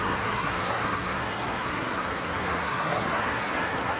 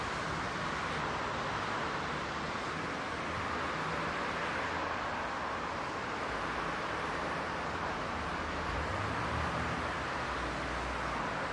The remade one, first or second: first